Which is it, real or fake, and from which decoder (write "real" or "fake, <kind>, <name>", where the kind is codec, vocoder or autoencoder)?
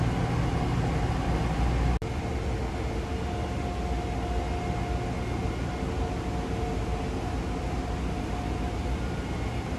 real